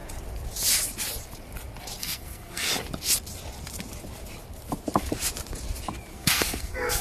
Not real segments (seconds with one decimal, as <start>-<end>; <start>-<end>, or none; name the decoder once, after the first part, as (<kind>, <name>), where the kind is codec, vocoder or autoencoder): 2.0-2.7 (codec, SNAC); 6.1-7.0